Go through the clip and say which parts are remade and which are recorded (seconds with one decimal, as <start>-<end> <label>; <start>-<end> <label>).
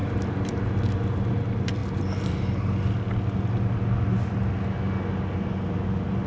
0.0-6.3 recorded